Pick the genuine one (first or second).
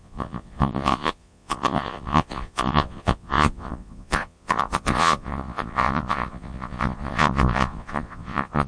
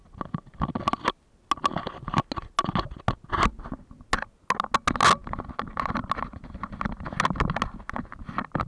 second